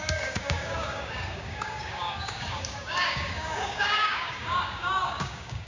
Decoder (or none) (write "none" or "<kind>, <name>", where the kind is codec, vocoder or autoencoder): codec, DAC